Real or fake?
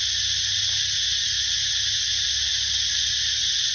real